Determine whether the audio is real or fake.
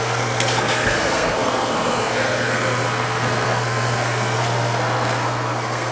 fake